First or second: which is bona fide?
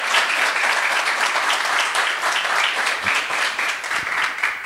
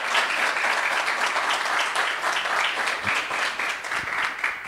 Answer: second